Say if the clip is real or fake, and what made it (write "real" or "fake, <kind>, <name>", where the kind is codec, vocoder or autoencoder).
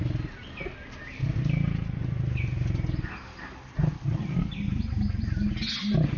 real